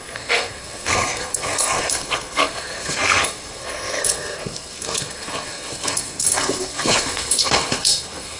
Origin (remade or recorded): remade